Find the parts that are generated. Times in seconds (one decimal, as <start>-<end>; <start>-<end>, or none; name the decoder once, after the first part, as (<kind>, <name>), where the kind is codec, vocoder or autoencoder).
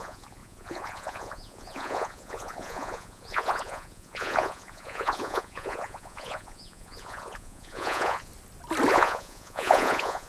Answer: 0.0-8.3 (vocoder, Vocos); 8.9-10.3